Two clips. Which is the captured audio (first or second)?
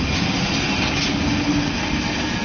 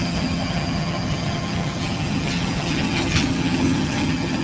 first